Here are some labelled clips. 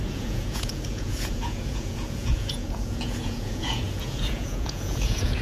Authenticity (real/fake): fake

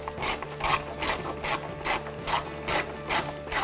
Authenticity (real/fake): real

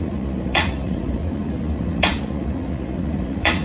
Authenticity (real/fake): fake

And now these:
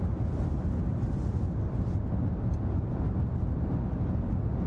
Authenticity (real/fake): real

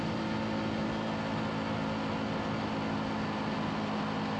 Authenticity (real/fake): real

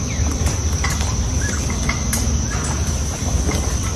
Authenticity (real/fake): real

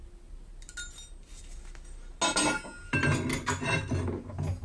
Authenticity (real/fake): real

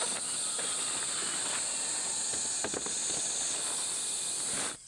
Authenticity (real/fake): real